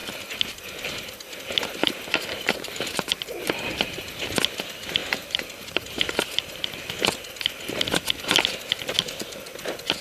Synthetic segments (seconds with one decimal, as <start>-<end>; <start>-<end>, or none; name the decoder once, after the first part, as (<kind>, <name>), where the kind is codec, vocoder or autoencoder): 1.8-4.1 (vocoder, BigVGAN v2); 5.0-6.8